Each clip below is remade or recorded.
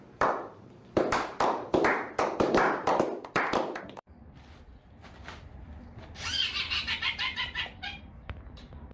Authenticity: remade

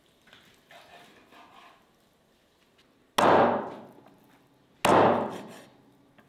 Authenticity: recorded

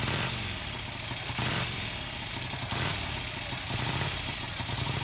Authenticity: remade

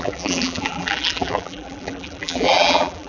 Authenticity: remade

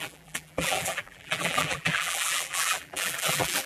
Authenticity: remade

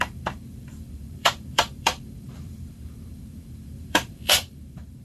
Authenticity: remade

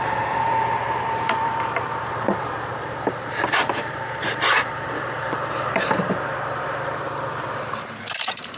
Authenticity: remade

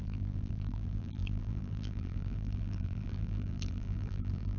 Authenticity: remade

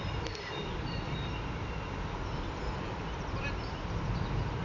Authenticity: recorded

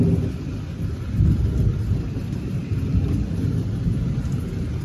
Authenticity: recorded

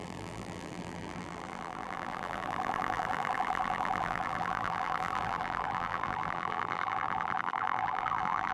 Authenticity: remade